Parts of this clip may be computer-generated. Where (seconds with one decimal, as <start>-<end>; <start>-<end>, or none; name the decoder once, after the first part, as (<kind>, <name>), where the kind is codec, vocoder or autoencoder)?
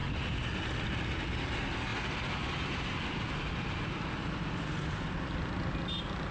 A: none